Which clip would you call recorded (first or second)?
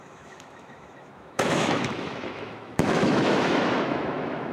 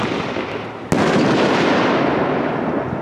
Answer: second